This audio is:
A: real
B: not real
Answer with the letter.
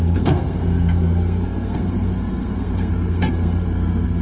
B